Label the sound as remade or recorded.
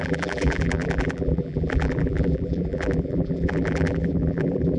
remade